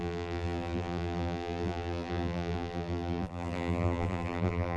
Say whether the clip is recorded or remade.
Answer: remade